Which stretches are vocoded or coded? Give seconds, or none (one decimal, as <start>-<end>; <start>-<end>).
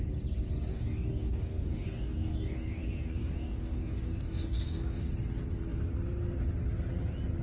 0.7-5.1